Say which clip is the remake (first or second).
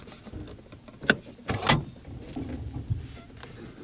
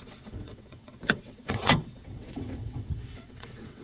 second